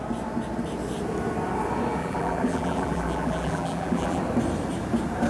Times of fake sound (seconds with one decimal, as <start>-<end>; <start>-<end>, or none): 2.0-4.2